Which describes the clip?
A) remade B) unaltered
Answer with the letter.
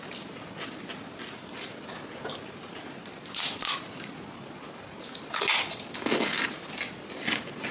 B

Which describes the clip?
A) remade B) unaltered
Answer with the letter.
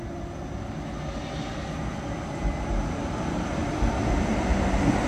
B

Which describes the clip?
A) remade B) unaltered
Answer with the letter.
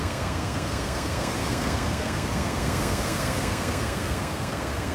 A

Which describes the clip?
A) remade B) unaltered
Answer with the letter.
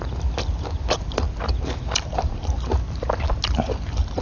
B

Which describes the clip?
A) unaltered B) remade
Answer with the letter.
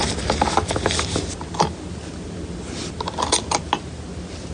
A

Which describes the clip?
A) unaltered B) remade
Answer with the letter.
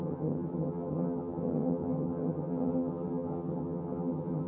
B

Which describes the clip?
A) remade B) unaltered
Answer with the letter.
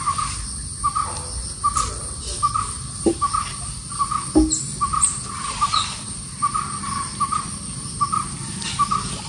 B